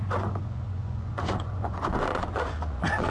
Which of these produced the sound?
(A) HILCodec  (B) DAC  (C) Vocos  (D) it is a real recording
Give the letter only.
C